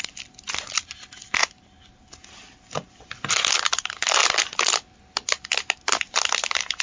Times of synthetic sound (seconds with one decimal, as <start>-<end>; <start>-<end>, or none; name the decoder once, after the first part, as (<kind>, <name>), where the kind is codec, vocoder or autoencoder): none